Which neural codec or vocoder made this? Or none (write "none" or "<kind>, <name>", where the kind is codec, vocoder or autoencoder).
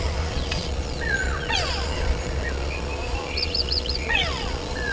vocoder, Vocos